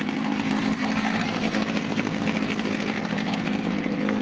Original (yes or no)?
no